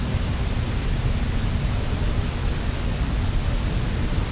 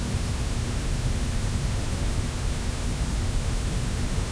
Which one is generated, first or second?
second